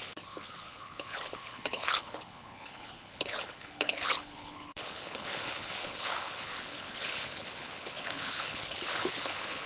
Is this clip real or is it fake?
fake